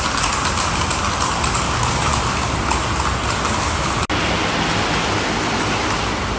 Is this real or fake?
real